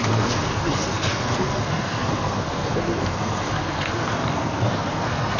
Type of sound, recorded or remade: remade